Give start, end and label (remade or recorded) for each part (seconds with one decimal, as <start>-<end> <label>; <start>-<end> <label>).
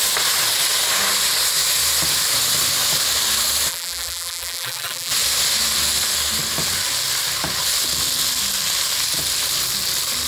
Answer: 0.0-3.7 recorded; 3.7-5.1 remade; 5.1-10.3 recorded